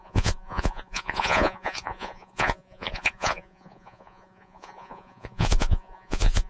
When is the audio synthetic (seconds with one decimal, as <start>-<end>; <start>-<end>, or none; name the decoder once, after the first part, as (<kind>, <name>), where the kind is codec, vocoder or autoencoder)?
0.0-6.5 (vocoder, Vocos)